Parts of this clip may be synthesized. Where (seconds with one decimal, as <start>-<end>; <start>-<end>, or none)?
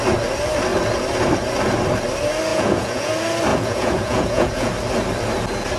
2.5-3.1; 3.5-4.7